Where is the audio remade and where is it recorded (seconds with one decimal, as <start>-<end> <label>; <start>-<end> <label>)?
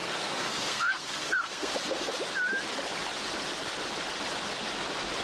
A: 0.0-1.7 remade; 1.7-5.2 recorded